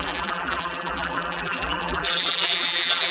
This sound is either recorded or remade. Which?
remade